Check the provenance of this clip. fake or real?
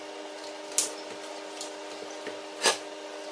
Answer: real